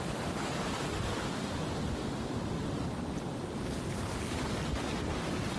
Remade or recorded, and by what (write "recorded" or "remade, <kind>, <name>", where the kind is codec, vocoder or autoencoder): recorded